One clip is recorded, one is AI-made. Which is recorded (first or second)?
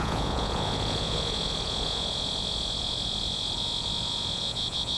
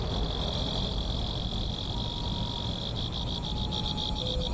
second